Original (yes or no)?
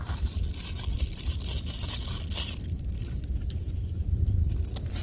yes